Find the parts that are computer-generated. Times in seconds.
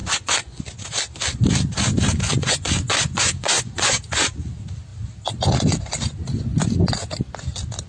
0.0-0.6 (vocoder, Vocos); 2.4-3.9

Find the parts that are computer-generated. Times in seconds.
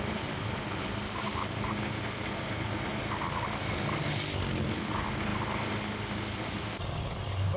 none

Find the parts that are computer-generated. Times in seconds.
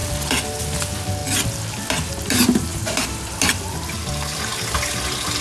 0.6-1.2 (vocoder, BigVGAN v2); 2.1-4.5